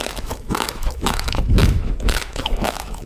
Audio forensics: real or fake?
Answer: fake